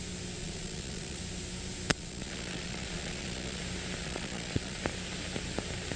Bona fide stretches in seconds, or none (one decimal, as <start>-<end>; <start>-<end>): 0.0-0.4; 1.2-1.9; 3.6-4.0; 4.8-6.0